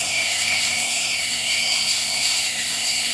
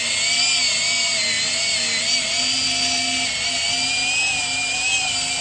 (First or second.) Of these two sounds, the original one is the second